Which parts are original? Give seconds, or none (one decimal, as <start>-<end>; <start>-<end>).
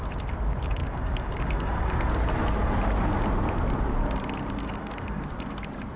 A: 0.0-0.8; 2.1-4.6; 5.2-6.0